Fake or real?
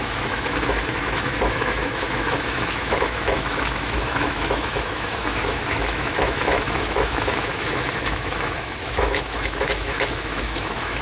fake